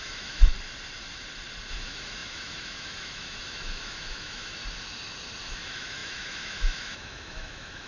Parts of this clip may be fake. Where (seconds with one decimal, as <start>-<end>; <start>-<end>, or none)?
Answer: 0.0-0.5; 1.7-4.6; 5.4-7.9